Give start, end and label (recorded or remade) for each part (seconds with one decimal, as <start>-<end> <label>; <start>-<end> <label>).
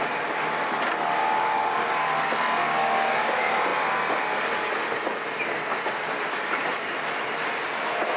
0.0-1.2 recorded; 1.2-1.9 remade; 1.9-2.6 recorded; 2.6-3.3 remade; 3.3-8.2 recorded